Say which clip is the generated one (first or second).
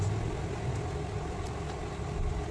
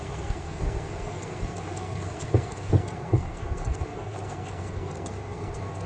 second